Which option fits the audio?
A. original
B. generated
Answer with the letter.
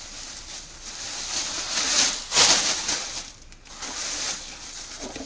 A